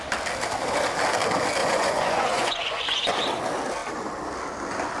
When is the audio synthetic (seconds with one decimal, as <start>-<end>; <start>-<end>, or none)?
1.6-3.2